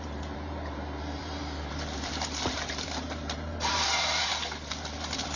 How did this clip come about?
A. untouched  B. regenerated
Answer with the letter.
B